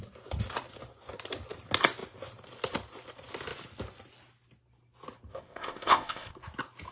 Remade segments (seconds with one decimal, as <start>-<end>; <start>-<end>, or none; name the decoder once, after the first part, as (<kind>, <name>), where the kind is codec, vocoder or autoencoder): 5.3-6.3 (codec, ZipCodec)